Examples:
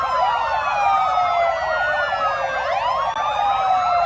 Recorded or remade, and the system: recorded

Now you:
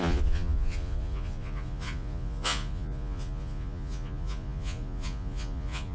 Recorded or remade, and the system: remade, vocoder, Vocos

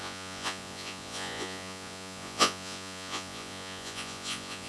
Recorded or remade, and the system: remade, vocoder, Vocos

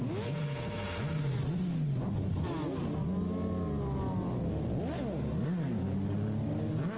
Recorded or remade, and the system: recorded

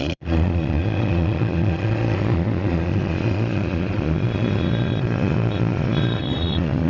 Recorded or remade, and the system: remade, vocoder, Vocos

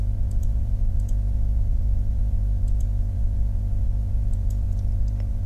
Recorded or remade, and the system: remade, vocoder, Vocos